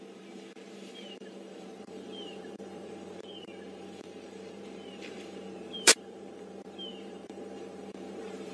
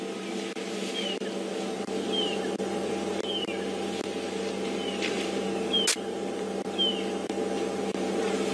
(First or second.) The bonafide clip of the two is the second